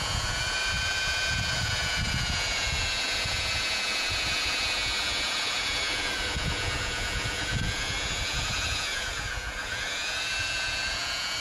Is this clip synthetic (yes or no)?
yes